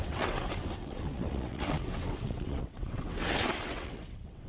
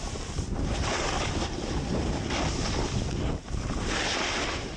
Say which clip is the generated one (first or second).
first